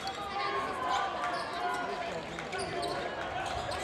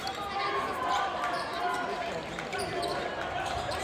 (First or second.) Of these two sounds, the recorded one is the first